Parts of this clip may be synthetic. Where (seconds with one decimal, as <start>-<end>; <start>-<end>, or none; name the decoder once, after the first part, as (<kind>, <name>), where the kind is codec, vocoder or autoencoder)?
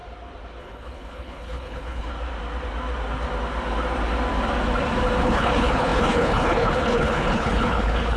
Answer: 0.6-2.1 (codec, HILCodec); 5.2-8.2